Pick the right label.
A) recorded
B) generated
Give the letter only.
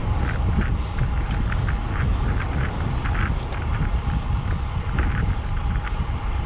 A